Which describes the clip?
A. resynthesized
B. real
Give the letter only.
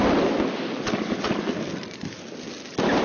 B